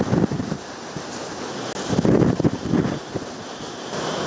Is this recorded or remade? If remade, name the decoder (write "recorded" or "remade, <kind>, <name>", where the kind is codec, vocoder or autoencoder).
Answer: recorded